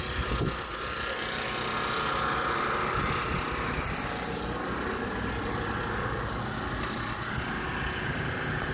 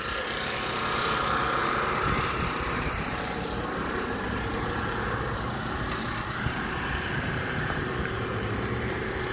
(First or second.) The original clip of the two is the first